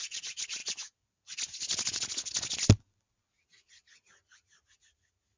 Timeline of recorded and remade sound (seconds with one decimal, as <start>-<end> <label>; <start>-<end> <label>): 0.0-0.6 remade; 0.6-3.3 recorded; 3.3-5.4 remade